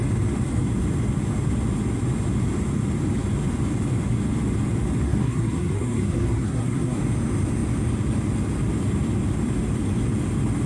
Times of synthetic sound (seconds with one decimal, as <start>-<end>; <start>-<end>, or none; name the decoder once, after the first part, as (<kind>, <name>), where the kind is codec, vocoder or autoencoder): 5.0-7.0 (codec, SNAC)